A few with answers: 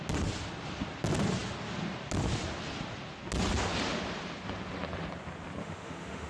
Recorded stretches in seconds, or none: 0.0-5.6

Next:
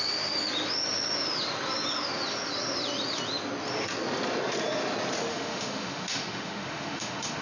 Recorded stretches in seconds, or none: 0.0-5.3

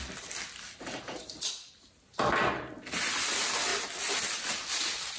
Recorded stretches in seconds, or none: 0.0-5.2

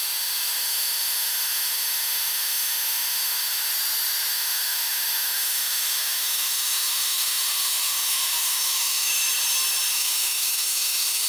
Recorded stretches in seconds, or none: 3.7-4.3; 9.1-9.9

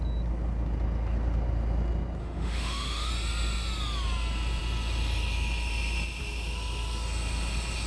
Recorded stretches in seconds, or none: 0.0-2.2; 3.1-7.9

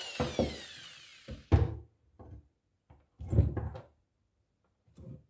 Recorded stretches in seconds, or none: 0.0-5.3

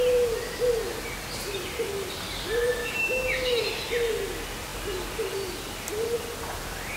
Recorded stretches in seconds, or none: 0.0-2.8; 3.6-7.0

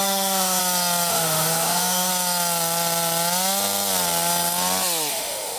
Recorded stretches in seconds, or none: 0.6-1.1; 2.1-5.1